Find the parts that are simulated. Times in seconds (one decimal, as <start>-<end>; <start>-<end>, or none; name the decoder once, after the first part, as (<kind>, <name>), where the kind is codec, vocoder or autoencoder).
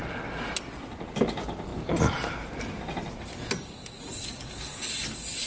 none